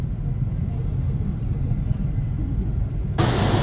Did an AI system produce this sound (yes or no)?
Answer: no